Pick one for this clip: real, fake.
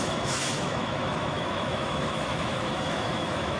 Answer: fake